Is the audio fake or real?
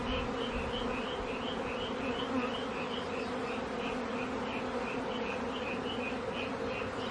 real